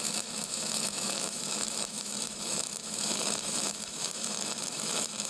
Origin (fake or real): fake